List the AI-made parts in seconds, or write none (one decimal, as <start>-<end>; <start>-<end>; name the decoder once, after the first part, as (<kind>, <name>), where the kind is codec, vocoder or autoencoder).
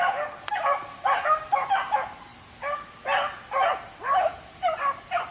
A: none